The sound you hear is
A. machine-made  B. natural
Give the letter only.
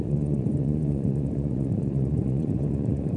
A